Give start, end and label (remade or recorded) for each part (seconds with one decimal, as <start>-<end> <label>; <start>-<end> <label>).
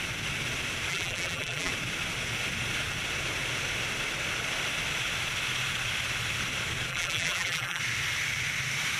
0.0-0.9 recorded; 0.9-1.7 remade; 1.7-6.9 recorded; 6.9-7.8 remade; 7.8-9.0 recorded